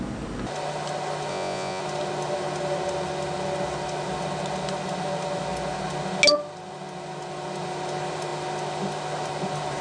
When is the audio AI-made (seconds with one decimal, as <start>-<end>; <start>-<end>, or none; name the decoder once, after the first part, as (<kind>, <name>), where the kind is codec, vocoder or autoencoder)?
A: 1.3-1.8 (vocoder, Vocos)